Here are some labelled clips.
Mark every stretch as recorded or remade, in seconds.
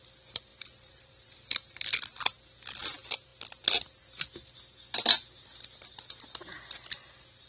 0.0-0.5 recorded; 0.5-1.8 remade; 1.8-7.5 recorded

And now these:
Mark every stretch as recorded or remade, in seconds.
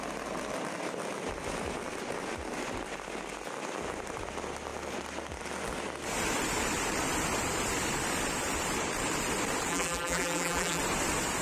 0.0-9.7 recorded; 9.7-10.8 remade; 10.8-11.4 recorded